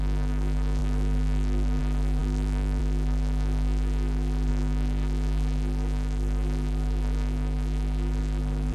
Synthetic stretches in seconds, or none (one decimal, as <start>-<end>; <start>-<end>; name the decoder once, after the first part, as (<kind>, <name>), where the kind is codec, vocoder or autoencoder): 0.0-8.7 (codec, SNAC)